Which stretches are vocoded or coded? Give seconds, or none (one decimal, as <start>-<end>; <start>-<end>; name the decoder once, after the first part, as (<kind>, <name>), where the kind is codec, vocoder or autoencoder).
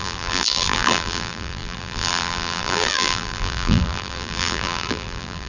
0.0-5.5 (vocoder, BigVGAN v2)